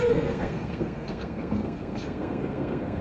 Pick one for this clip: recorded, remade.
remade